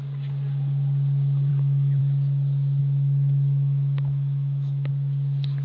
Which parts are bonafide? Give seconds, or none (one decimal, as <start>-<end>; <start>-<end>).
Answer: 0.0-1.5; 2.0-2.8; 4.9-5.6